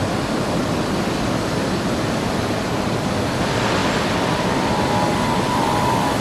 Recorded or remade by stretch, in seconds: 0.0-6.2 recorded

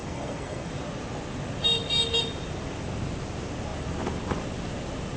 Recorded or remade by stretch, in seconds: 0.0-0.7 remade; 0.7-5.2 recorded

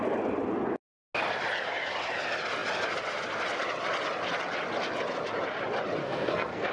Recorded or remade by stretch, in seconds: 0.0-6.0 recorded; 6.0-6.7 remade

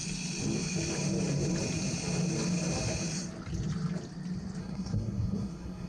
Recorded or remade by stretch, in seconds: 0.0-4.6 recorded; 4.6-5.9 remade